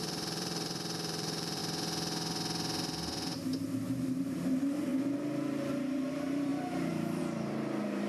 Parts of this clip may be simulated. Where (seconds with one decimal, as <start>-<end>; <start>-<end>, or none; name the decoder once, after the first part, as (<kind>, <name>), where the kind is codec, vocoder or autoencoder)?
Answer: 0.0-1.6 (vocoder, BigVGAN v2); 4.1-4.9; 5.7-8.1